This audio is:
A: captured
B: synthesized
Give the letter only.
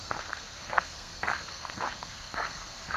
B